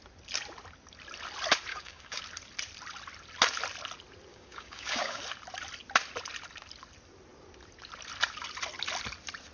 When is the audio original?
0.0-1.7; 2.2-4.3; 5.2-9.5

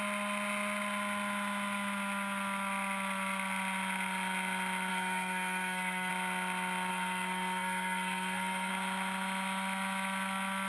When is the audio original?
0.0-4.9; 6.1-6.9; 8.7-10.7

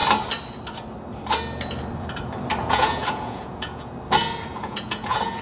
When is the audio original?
0.0-2.6; 3.9-4.5

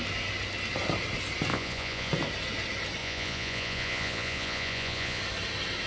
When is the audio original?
0.0-1.5; 2.1-3.0; 5.2-5.9